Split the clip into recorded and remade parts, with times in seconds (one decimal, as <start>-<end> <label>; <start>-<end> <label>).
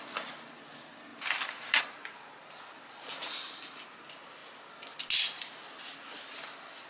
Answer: 0.0-6.9 recorded